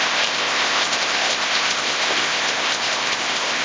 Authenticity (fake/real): fake